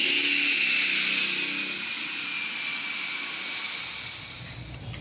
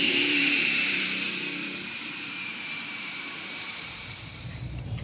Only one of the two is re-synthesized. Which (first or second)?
second